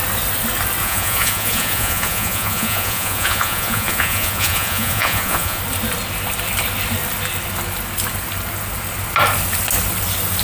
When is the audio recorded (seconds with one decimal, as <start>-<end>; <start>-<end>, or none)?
0.0-0.8; 5.6-10.4